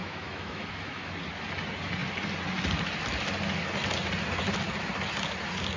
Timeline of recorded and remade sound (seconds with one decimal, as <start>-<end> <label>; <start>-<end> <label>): 0.0-1.1 remade; 1.1-5.8 recorded